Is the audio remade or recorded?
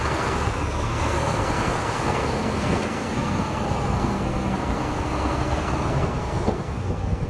remade